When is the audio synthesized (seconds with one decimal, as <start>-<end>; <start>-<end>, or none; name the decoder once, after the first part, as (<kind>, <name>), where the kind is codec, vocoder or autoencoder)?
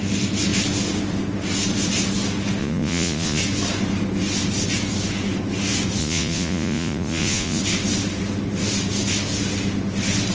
2.6-3.4 (vocoder, Vocos); 6.0-7.6